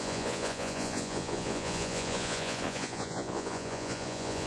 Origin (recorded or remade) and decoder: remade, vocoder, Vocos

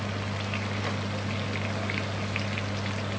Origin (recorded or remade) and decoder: recorded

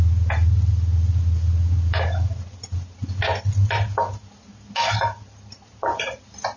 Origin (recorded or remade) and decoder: recorded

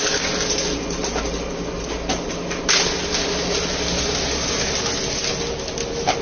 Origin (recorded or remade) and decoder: recorded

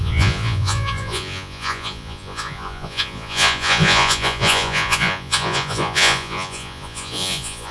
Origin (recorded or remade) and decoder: remade, vocoder, Vocos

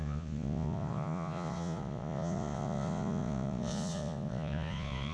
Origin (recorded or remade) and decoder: remade, vocoder, Vocos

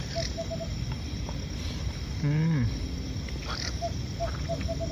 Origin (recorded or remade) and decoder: recorded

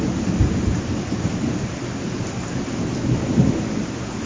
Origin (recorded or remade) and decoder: recorded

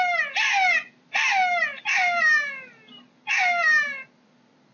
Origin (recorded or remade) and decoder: recorded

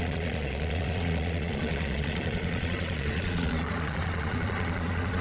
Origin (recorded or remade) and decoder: remade, vocoder, Vocos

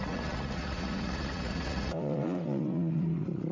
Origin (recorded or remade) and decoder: remade, vocoder, Vocos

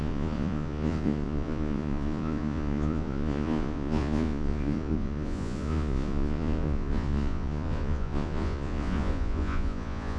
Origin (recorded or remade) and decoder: remade, vocoder, Vocos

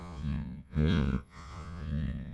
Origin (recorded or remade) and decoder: remade, vocoder, Vocos